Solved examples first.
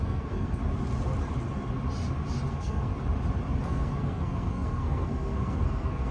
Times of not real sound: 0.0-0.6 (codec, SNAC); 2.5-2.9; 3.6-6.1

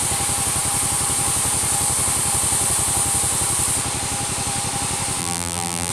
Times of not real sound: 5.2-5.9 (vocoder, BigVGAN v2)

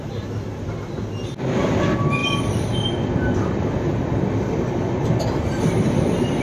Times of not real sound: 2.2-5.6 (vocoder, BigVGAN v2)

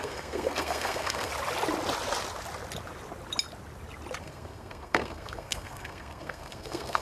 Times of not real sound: 0.0-1.3 (codec, SNAC); 4.2-7.0

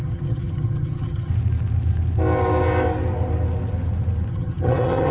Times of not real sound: 0.0-1.3 (vocoder, HiFi-GAN); 4.3-5.1

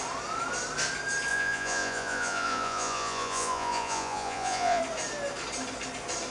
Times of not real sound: 1.3-4.8 (vocoder, Vocos)